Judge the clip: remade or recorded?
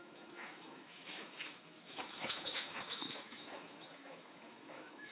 remade